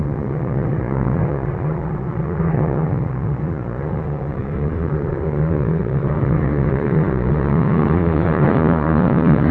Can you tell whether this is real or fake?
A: fake